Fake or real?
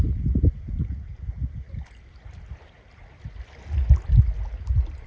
real